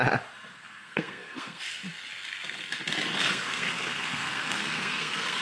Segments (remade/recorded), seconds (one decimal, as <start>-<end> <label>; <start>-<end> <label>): 0.0-0.5 recorded; 0.5-1.6 remade; 1.6-3.2 recorded; 3.2-5.4 remade